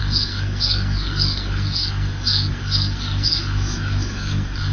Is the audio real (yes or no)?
no